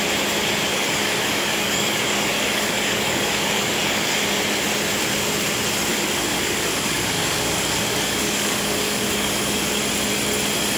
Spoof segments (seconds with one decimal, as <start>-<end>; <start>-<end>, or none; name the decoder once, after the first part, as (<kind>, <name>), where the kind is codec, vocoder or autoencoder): 0.7-4.2 (codec, DAC); 5.9-9.8